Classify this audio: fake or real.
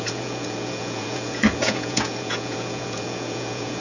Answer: fake